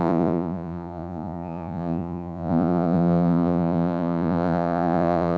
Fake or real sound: fake